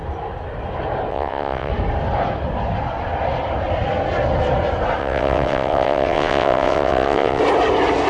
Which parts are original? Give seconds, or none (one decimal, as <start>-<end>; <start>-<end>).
0.0-1.1; 1.7-5.0; 7.4-8.1